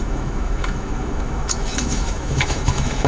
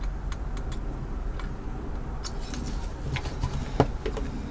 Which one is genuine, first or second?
second